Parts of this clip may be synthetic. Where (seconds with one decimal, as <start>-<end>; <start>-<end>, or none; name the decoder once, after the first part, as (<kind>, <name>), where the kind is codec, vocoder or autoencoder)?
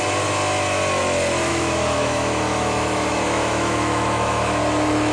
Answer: 1.5-4.6 (autoencoder, DAC-VAE)